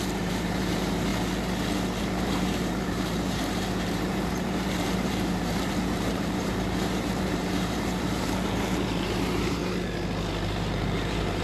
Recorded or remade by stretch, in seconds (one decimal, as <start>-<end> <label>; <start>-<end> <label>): 0.0-1.1 remade; 1.1-2.0 recorded; 2.0-9.6 remade; 9.6-10.5 recorded; 10.5-11.4 remade

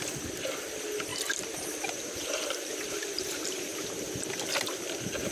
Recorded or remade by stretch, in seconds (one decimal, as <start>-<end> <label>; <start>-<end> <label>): 0.0-1.1 recorded; 1.1-4.3 remade; 4.3-5.3 recorded

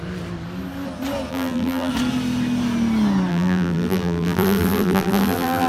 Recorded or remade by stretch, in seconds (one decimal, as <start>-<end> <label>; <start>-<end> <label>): 0.0-1.3 recorded; 1.3-1.9 remade; 1.9-3.3 recorded; 3.3-5.7 remade

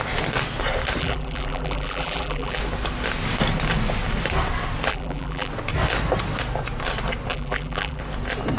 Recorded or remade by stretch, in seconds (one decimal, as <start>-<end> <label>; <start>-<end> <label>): 0.0-1.0 recorded; 1.0-2.6 remade; 2.6-4.9 recorded; 4.9-5.5 remade; 5.5-7.3 recorded; 7.3-8.0 remade; 8.0-8.6 recorded